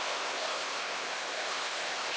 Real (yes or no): no